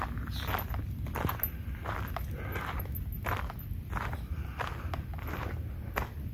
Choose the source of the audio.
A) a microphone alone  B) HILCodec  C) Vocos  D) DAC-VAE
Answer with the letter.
A